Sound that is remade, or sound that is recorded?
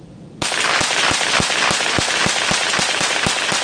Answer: recorded